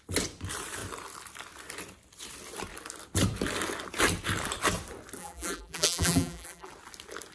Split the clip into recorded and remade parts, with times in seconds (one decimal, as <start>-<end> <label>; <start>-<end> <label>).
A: 0.0-5.2 recorded; 5.2-6.7 remade; 6.7-7.3 recorded